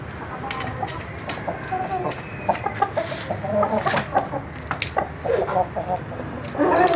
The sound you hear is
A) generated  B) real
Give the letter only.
B